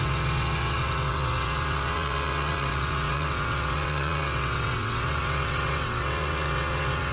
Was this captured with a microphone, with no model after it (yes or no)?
no